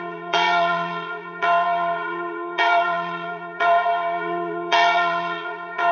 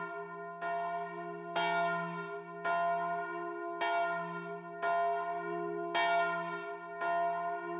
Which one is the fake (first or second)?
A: first